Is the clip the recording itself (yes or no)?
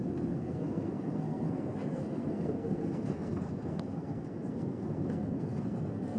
no